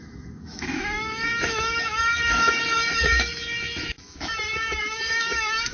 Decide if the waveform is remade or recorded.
remade